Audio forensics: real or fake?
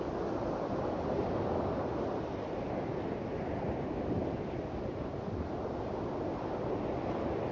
real